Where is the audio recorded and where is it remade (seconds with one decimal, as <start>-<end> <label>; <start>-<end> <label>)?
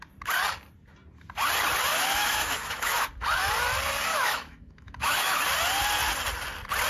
0.0-1.9 recorded; 1.9-3.1 remade; 3.1-4.1 recorded; 4.1-5.4 remade; 5.4-6.9 recorded